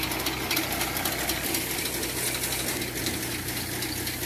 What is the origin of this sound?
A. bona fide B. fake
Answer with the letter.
A